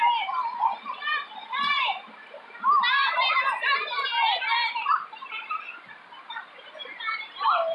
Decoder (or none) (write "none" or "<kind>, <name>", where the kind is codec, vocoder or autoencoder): none